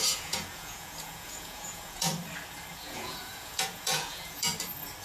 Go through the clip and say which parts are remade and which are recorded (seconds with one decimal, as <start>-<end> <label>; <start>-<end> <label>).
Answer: 0.0-2.1 remade; 2.1-2.7 recorded; 2.7-4.5 remade; 4.5-5.0 recorded